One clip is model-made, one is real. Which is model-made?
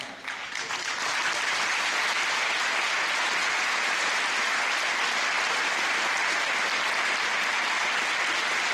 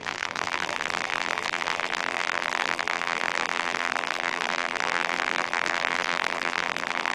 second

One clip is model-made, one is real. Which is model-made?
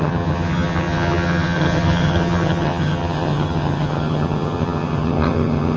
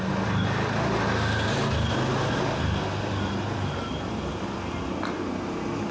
first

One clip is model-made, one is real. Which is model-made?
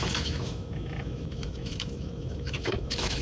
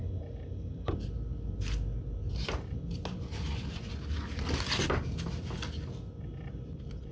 first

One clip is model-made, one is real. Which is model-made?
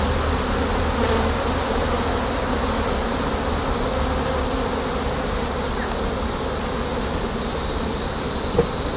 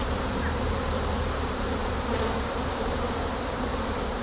second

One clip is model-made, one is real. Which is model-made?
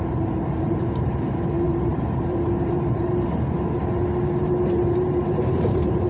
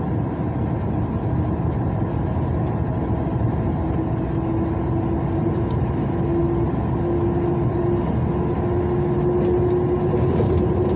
first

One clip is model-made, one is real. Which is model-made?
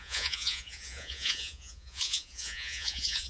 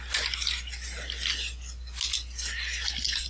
first